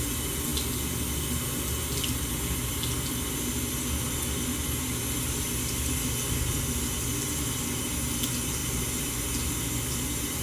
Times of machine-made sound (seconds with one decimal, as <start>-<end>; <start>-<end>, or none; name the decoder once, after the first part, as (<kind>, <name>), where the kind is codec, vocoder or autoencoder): none